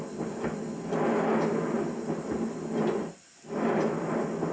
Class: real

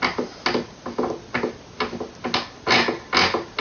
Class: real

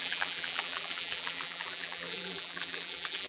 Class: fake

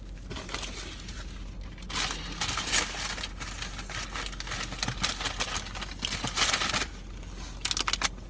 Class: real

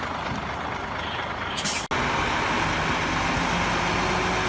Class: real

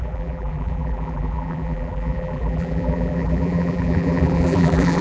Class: fake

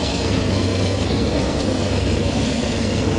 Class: fake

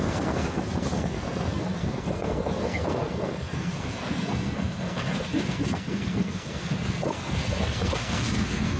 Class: fake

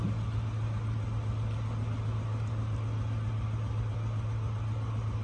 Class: real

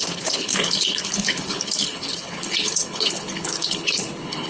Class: fake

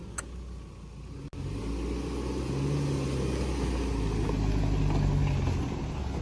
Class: real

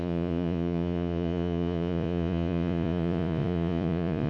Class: fake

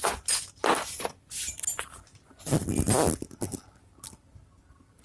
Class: real